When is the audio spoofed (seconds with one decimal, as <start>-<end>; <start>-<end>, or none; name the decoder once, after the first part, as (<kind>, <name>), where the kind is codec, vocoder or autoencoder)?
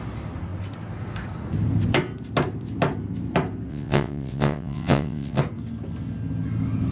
3.7-5.4 (vocoder, WaveNeXt)